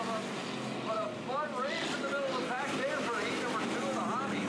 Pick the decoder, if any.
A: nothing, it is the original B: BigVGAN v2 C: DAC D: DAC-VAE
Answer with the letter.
A